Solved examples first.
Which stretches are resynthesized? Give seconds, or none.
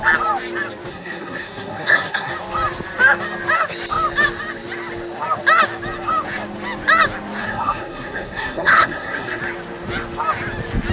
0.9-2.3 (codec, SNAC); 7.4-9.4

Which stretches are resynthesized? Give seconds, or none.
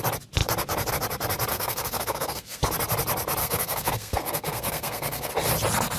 1.5-2.6 (codec, SNAC); 3.4-5.3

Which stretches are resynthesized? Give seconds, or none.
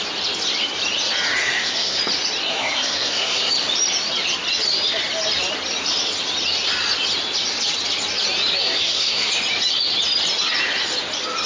1.4-2.0 (codec, SNAC); 2.5-3.5; 8.6-9.3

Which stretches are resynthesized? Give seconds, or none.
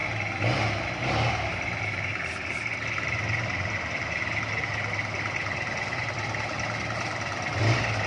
none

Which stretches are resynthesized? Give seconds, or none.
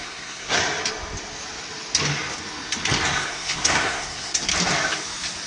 0.0-0.6 (codec, SNAC); 3.2-4.5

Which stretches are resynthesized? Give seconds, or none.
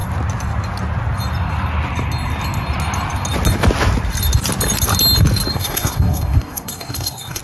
5.5-7.4 (codec, SNAC)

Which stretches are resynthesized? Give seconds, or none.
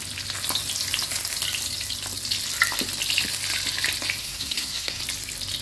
4.2-5.0 (codec, SNAC)